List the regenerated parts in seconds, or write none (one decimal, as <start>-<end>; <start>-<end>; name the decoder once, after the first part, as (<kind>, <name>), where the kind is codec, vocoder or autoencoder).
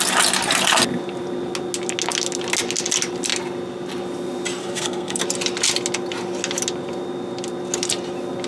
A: 4.6-5.2 (codec, SNAC)